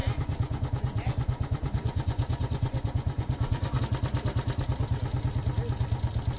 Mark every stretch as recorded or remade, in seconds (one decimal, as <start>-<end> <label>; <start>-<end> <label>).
0.0-3.8 remade; 3.8-6.4 recorded